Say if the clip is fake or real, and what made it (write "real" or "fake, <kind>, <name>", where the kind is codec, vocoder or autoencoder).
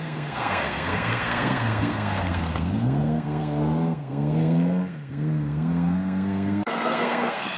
fake, codec, SNAC